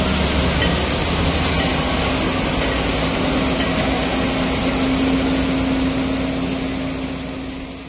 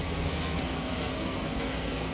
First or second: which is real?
first